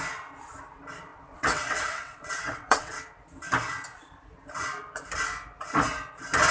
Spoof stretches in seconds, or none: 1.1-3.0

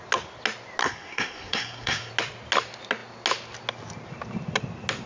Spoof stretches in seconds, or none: 0.8-2.1